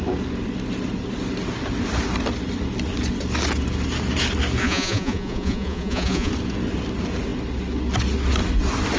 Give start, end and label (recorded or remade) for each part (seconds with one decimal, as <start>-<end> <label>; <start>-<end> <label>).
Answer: 0.0-4.6 recorded; 4.6-6.3 remade; 6.3-9.0 recorded